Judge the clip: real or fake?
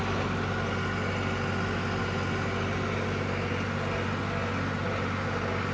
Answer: real